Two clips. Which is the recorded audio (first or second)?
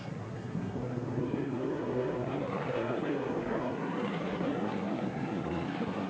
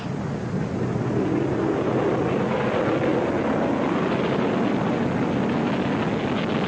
second